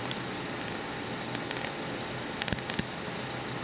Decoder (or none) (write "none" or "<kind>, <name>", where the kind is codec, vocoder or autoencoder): none